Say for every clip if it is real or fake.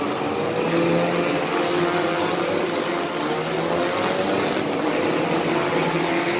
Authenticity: real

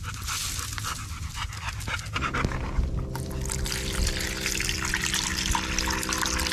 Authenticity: real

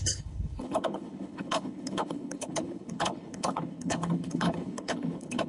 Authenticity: fake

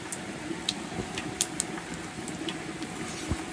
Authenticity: real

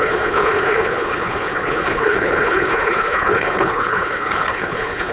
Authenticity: fake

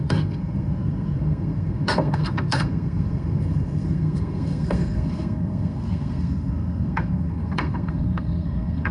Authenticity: fake